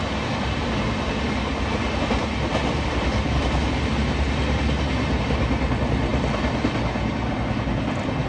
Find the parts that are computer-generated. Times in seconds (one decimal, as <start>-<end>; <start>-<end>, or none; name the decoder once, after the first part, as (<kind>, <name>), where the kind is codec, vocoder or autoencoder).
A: none